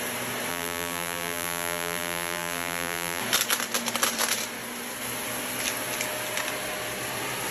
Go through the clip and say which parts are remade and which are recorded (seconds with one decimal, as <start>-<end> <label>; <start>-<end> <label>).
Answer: 0.0-0.5 recorded; 0.5-3.2 remade; 3.2-7.5 recorded

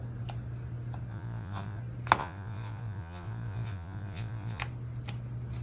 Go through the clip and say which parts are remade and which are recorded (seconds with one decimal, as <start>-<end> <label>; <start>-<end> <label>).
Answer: 0.0-1.1 recorded; 1.1-1.8 remade; 1.8-2.2 recorded; 2.2-4.6 remade; 4.6-5.6 recorded

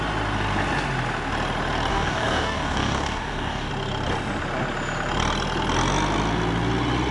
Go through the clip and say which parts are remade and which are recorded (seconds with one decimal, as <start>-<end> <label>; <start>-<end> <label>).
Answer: 0.0-1.9 recorded; 1.9-3.7 remade; 3.7-7.1 recorded

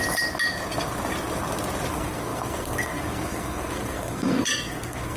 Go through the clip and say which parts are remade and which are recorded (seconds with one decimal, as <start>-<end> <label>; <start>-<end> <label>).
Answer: 0.0-1.9 recorded; 1.9-5.2 remade

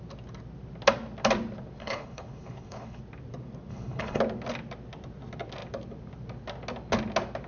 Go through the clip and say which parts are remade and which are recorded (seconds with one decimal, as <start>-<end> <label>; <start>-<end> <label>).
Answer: 0.0-1.8 recorded; 1.8-3.0 remade; 3.0-3.7 recorded; 3.7-4.2 remade; 4.2-7.5 recorded

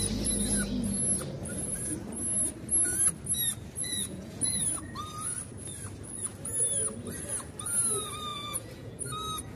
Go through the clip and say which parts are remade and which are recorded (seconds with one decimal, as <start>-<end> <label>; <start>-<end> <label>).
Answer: 0.0-3.8 recorded; 3.8-4.6 remade; 4.6-8.3 recorded; 8.3-9.0 remade; 9.0-9.6 recorded

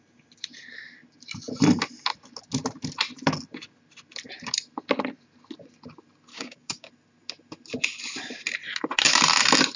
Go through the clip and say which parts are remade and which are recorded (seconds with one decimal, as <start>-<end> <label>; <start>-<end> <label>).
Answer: 0.0-6.3 recorded; 6.3-6.9 remade; 6.9-9.8 recorded